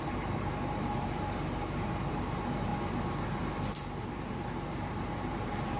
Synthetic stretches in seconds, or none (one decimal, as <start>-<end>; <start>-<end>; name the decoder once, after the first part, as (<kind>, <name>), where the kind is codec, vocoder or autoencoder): 0.0-2.7 (vocoder, BigVGAN v2); 4.1-5.8